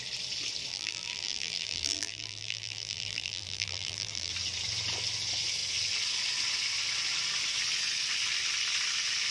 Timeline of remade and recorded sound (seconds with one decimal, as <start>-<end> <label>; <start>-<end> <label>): 0.0-0.7 recorded; 0.7-4.3 remade; 4.3-9.3 recorded